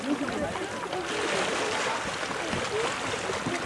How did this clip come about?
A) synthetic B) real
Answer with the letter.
B